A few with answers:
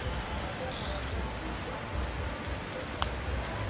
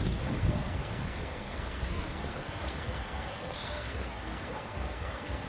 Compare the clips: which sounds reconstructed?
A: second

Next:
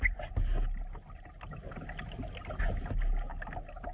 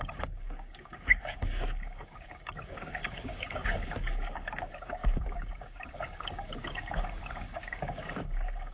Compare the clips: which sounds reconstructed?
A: second